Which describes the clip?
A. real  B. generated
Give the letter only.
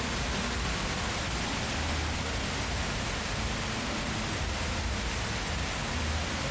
A